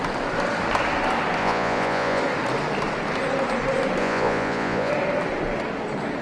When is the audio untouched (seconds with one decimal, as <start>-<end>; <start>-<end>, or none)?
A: 0.0-1.4; 2.2-4.0; 4.9-6.2